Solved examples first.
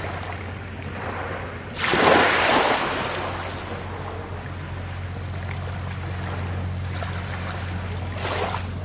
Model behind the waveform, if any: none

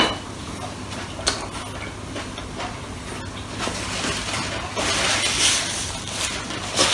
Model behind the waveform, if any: none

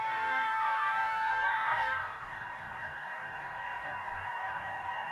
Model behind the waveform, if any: codec, DAC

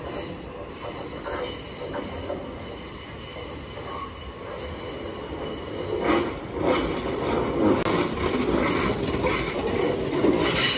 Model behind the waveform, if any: none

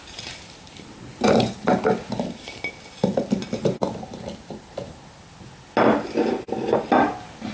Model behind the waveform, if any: none